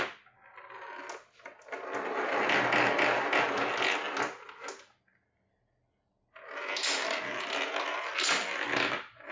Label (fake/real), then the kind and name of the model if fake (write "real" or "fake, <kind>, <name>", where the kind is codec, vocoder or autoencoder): real